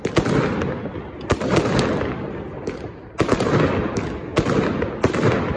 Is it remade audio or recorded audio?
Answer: recorded